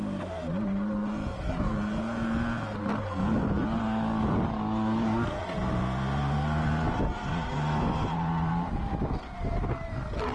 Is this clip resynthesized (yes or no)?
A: no